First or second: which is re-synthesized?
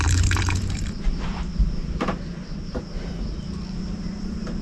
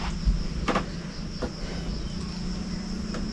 first